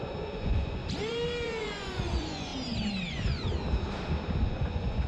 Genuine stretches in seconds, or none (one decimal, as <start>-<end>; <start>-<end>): 0.8-1.6; 2.5-3.1; 3.5-4.4